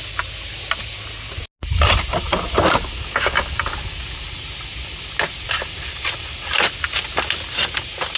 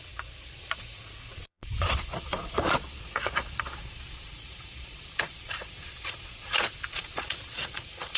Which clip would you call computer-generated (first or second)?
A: second